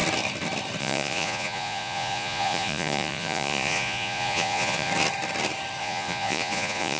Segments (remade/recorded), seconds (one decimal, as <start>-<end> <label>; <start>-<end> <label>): 0.0-0.8 recorded; 0.8-4.9 remade; 4.9-5.8 recorded; 5.8-7.0 remade